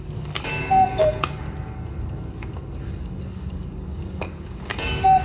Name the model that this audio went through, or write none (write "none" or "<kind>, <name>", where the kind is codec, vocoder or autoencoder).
codec, DAC